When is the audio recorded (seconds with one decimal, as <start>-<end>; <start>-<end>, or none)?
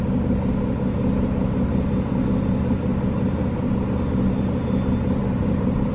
0.0-5.2